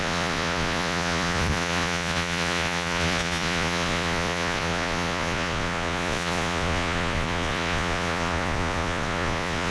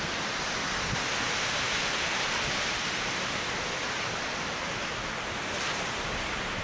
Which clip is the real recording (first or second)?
second